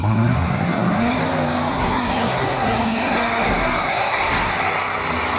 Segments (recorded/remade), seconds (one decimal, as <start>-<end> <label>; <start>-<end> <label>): 0.0-1.2 remade; 1.2-1.7 recorded; 1.7-4.5 remade; 4.5-5.4 recorded